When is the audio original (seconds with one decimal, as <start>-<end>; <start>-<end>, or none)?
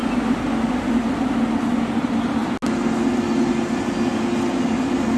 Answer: 0.0-5.2